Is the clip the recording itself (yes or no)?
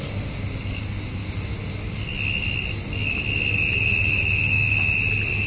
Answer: yes